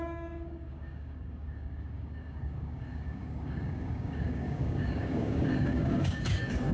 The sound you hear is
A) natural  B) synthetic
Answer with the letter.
B